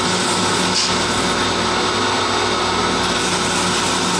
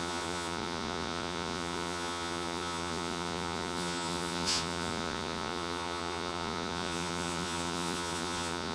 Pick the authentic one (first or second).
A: first